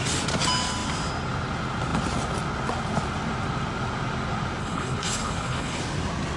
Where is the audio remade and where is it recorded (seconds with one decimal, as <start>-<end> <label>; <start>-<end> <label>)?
0.0-4.6 recorded; 4.6-5.8 remade; 5.8-6.4 recorded